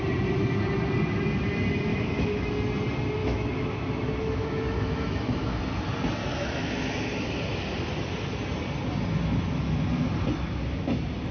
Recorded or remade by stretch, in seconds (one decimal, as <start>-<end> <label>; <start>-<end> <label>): 0.0-1.9 recorded; 1.9-2.5 remade; 2.5-3.2 recorded; 3.2-5.6 remade; 5.6-6.2 recorded; 6.2-6.7 remade; 6.7-11.3 recorded